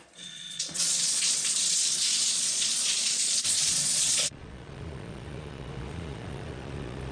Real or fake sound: fake